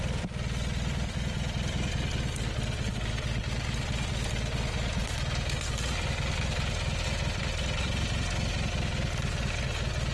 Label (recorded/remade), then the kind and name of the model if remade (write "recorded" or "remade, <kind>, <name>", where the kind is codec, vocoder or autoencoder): recorded